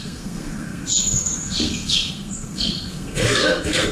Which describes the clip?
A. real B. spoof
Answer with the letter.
B